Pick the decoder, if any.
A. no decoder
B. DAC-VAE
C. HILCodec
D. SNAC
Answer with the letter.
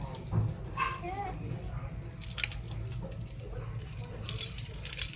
A